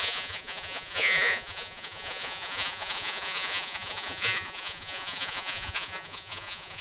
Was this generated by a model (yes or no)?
yes